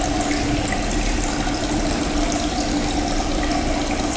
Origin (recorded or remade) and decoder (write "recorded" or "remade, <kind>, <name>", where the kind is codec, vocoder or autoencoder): recorded